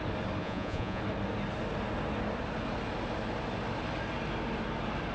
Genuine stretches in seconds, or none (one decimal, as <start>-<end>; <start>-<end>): 0.0-0.4; 1.0-5.1

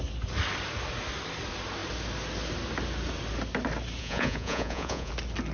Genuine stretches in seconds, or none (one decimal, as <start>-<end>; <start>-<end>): 0.0-4.0; 5.1-5.5

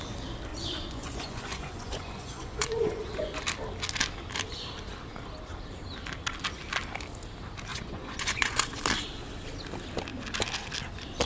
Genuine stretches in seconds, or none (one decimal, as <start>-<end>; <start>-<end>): 0.0-0.5; 3.4-7.7; 8.8-11.3

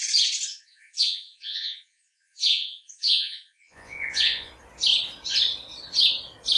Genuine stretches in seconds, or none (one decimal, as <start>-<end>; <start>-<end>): 0.0-0.5; 4.5-6.6

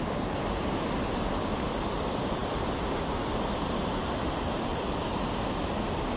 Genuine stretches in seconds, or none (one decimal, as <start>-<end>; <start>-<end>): 0.0-6.2

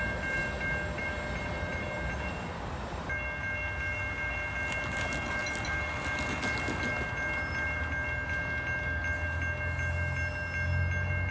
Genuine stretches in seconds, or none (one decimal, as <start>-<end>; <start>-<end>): 0.0-11.3